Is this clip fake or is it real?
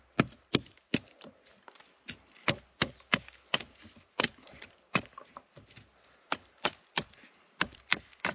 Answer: real